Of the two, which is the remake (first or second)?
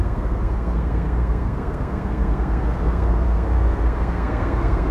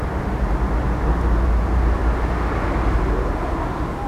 first